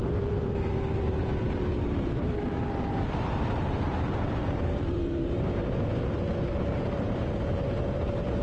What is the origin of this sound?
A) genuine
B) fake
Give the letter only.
B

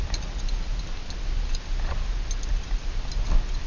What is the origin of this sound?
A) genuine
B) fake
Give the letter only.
A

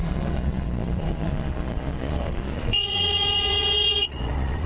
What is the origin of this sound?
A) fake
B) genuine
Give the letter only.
A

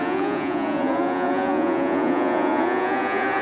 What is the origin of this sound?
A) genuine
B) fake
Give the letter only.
B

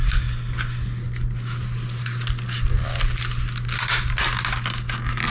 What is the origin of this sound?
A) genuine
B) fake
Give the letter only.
A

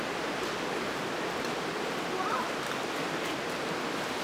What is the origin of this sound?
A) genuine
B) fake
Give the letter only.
A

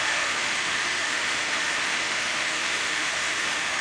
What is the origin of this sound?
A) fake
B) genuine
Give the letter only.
A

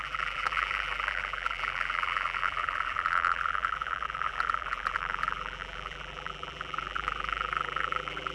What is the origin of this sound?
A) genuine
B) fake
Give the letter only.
B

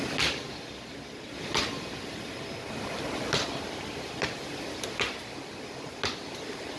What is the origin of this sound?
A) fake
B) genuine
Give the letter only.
B